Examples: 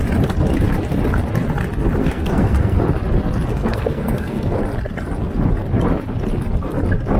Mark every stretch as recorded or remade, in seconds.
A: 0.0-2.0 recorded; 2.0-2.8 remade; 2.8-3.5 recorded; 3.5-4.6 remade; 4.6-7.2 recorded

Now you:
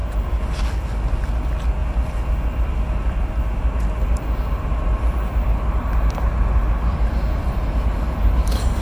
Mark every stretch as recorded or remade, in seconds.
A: 0.0-8.8 recorded

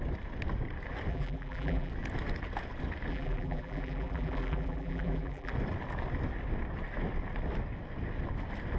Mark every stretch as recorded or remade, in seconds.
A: 0.0-1.1 recorded; 1.1-1.9 remade; 1.9-3.1 recorded; 3.1-5.5 remade; 5.5-8.8 recorded

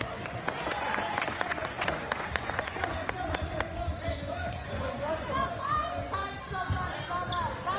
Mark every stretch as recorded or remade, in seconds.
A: 0.0-6.2 remade; 6.2-7.8 recorded

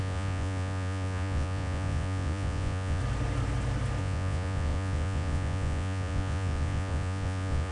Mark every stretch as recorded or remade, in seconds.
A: 0.0-3.0 remade; 3.0-4.0 recorded; 4.0-7.7 remade

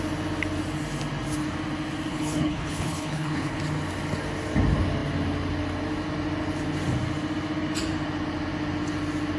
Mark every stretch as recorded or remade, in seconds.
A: 0.0-2.1 recorded; 2.1-3.6 remade; 3.6-9.4 recorded

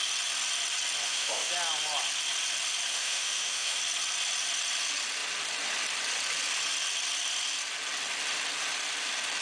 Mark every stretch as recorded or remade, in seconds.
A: 0.0-1.0 recorded; 1.0-1.5 remade; 1.5-2.9 recorded; 2.9-3.8 remade; 3.8-9.4 recorded

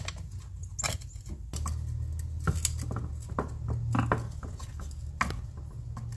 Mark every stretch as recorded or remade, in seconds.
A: 0.0-6.2 recorded